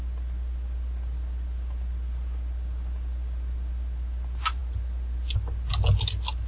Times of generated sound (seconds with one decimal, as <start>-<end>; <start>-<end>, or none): none